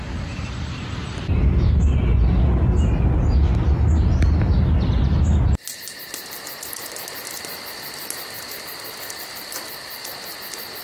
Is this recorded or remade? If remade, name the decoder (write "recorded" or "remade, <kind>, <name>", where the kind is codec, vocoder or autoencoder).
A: recorded